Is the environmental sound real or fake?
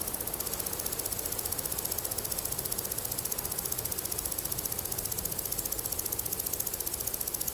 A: real